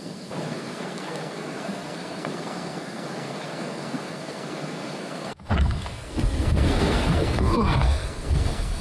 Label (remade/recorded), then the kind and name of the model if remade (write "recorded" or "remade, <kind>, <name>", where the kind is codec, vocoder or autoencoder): remade, codec, SNAC